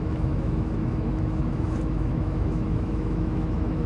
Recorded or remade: remade